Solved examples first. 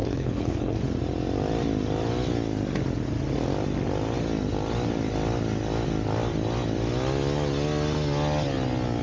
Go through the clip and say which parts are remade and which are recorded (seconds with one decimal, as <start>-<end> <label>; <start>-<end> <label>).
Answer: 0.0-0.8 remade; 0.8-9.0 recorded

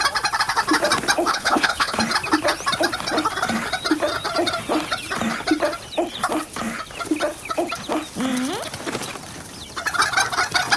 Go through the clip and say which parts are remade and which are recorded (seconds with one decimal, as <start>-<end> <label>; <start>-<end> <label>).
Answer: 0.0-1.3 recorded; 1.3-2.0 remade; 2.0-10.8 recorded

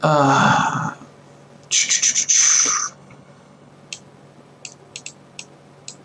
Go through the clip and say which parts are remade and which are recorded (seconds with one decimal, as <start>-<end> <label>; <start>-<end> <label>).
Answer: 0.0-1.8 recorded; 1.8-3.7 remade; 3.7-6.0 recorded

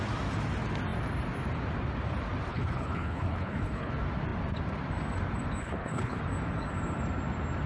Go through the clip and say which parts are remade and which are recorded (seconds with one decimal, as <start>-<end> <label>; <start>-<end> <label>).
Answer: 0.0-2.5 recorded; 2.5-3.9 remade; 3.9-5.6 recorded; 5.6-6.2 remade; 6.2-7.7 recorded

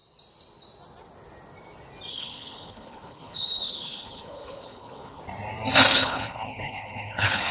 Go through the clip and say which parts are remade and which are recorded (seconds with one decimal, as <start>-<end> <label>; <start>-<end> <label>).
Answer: 0.0-2.1 recorded; 2.1-5.2 remade; 5.2-5.9 recorded; 5.9-7.5 remade

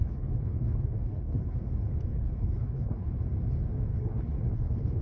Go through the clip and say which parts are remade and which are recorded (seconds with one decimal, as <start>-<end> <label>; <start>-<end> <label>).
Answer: 0.0-1.6 remade; 1.6-2.1 recorded; 2.1-3.2 remade; 3.2-3.9 recorded; 3.9-5.0 remade

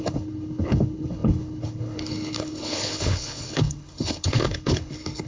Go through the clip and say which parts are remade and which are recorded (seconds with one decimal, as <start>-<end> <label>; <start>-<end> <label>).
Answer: 0.0-5.3 remade

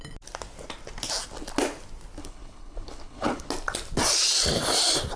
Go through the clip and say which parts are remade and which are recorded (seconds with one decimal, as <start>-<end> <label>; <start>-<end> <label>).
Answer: 0.0-2.2 recorded; 2.2-3.5 remade; 3.5-5.2 recorded